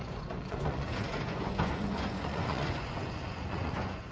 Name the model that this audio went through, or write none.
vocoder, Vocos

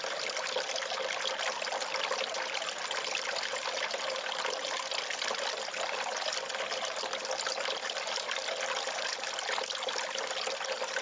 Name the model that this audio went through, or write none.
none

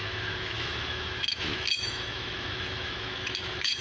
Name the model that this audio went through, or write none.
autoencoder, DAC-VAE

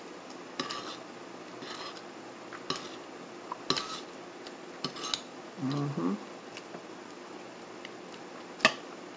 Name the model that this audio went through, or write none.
none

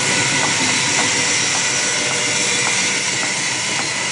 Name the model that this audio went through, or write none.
none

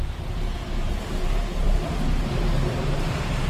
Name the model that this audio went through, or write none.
vocoder, BigVGAN v2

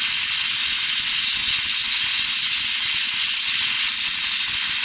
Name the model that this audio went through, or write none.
none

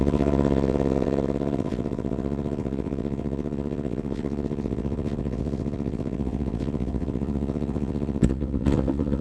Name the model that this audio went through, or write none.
vocoder, WaveNeXt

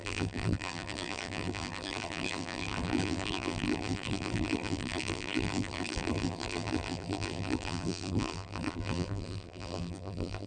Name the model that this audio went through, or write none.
vocoder, BigVGAN v2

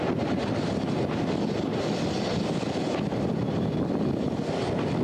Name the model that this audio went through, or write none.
none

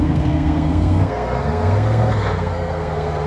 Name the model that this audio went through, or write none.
codec, SNAC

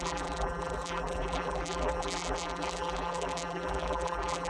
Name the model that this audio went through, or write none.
vocoder, BigVGAN v2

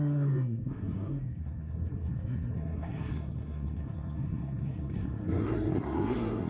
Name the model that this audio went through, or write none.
codec, SNAC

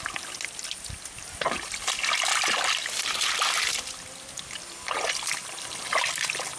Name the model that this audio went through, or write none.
none